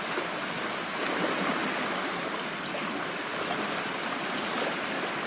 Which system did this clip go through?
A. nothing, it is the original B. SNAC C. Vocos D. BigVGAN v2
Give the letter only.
A